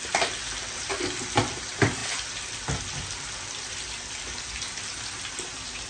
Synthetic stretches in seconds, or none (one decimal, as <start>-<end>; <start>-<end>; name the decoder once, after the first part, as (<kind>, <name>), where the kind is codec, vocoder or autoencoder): none